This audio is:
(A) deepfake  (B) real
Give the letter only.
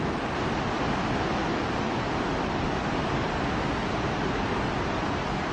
B